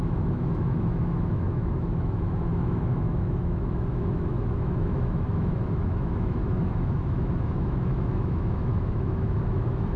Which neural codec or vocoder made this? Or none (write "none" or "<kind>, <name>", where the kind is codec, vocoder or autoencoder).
autoencoder, DAC-VAE